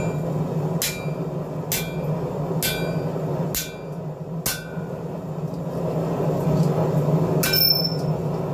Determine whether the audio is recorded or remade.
recorded